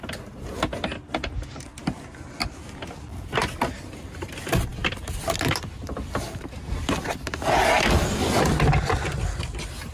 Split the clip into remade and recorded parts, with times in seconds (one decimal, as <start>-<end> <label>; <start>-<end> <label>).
0.0-9.9 recorded